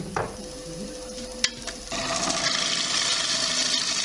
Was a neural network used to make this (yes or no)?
no